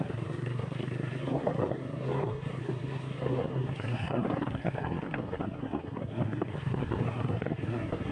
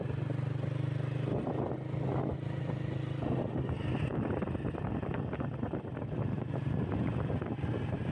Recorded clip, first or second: second